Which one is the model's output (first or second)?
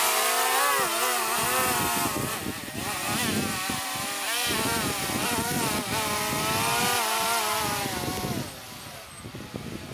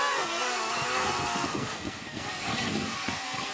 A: second